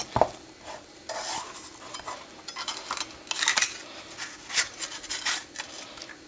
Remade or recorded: recorded